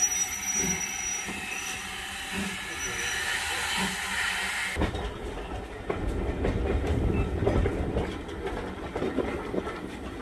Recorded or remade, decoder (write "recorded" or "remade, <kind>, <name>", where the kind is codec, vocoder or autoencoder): recorded